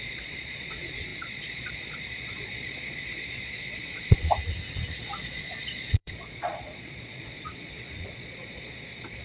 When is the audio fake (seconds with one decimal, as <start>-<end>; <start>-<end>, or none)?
0.0-4.4; 4.9-9.2